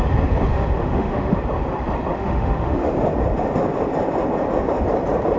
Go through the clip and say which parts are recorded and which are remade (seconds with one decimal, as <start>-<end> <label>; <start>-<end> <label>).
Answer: 0.0-0.5 recorded; 0.5-1.4 remade; 1.4-2.1 recorded; 2.1-2.9 remade; 2.9-5.4 recorded